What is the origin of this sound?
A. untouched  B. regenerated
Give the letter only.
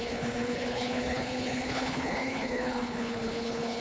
B